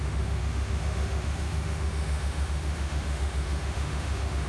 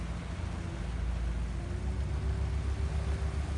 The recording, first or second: second